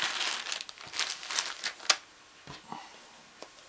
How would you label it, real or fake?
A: real